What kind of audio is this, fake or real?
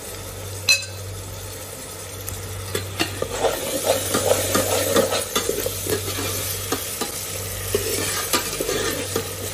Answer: real